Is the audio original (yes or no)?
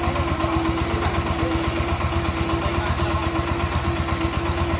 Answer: yes